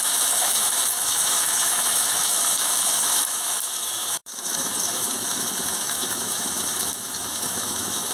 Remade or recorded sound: remade